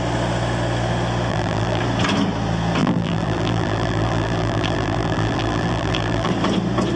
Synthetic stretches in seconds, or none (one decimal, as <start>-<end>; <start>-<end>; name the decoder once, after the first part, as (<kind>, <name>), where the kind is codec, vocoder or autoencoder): 1.3-1.8 (vocoder, BigVGAN v2); 2.8-6.3